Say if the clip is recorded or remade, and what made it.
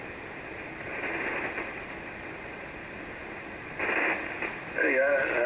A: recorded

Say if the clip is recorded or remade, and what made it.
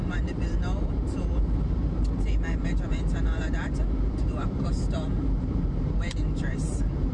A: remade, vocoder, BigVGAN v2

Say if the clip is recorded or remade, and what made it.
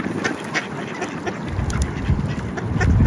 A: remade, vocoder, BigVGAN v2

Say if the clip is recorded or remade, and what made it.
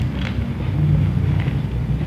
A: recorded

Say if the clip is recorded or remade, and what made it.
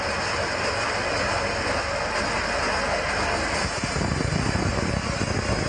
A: recorded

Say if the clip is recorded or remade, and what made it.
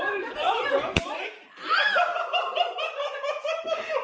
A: remade, vocoder, BigVGAN v2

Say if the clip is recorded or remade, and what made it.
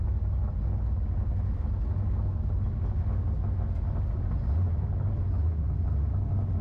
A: recorded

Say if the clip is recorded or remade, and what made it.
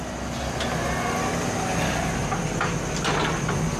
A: recorded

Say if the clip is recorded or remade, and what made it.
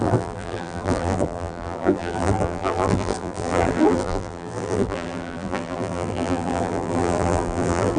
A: remade, vocoder, BigVGAN v2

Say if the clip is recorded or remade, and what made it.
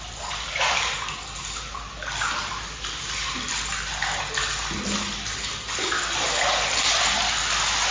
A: recorded